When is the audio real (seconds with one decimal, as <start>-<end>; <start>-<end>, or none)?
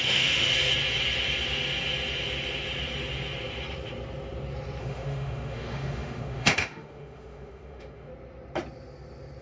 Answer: 0.5-4.8; 8.1-9.4